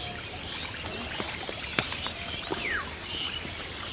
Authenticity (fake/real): real